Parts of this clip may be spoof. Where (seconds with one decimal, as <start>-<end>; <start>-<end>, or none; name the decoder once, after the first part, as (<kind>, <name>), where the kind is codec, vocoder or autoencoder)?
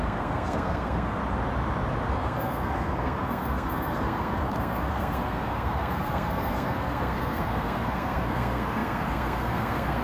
0.0-1.2 (codec, SNAC); 2.1-10.0